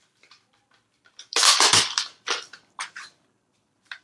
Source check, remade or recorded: remade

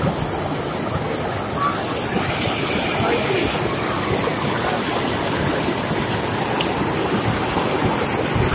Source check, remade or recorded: recorded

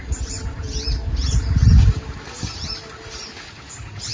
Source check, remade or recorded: recorded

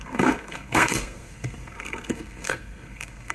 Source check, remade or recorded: remade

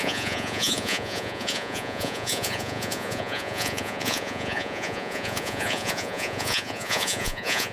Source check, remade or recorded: remade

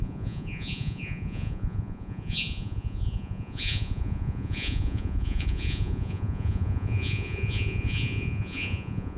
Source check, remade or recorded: remade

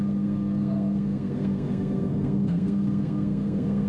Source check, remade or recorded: remade